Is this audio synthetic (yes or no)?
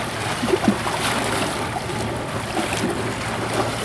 no